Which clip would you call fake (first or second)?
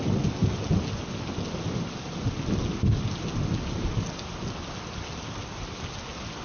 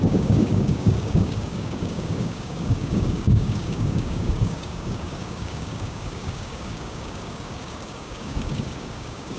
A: second